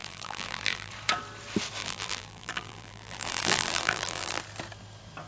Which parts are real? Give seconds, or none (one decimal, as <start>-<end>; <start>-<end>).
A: 0.9-1.8; 4.4-5.3